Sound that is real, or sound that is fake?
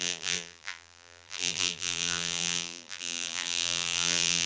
fake